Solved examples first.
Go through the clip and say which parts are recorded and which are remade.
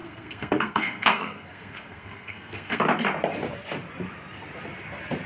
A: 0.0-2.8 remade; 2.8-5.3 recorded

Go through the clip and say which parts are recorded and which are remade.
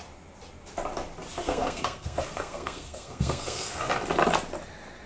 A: 0.0-1.4 recorded; 1.4-3.9 remade; 3.9-5.1 recorded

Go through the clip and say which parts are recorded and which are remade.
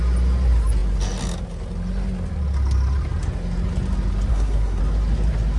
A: 0.0-4.3 recorded; 4.3-4.8 remade; 4.8-5.6 recorded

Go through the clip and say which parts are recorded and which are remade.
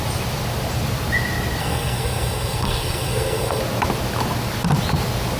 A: 0.0-1.6 recorded; 1.6-3.6 remade; 3.6-5.4 recorded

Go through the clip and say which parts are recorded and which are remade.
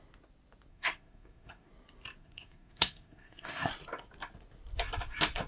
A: 0.0-0.7 recorded; 0.7-1.7 remade; 1.7-2.2 recorded; 2.2-3.7 remade; 3.7-5.5 recorded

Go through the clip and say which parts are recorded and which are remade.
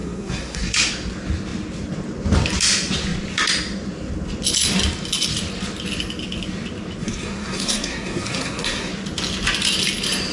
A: 0.0-0.9 remade; 0.9-7.0 recorded; 7.0-8.9 remade; 8.9-10.3 recorded